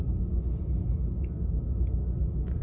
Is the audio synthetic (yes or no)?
no